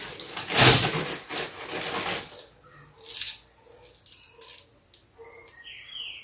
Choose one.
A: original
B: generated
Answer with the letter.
A